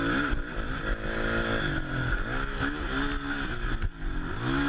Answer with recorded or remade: recorded